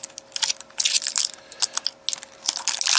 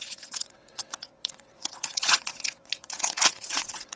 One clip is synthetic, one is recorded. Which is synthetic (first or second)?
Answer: second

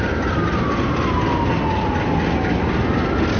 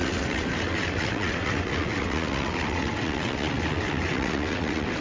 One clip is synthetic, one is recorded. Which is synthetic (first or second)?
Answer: second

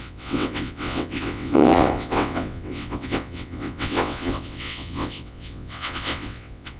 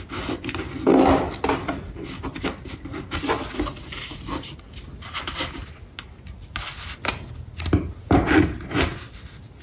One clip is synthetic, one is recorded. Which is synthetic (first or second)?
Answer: first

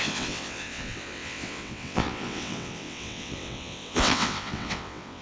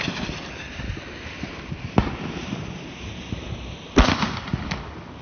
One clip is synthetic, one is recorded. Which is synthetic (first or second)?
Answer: first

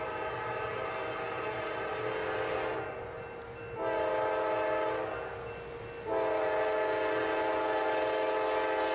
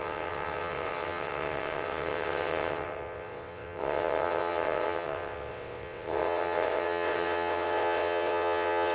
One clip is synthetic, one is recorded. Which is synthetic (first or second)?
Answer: second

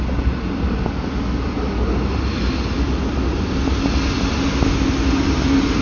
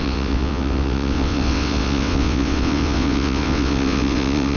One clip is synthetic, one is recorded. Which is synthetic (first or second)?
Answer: second